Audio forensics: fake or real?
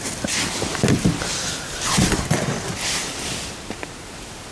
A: fake